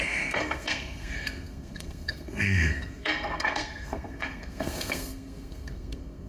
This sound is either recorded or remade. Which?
remade